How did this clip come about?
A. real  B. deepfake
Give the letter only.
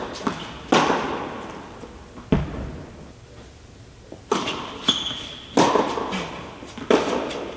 A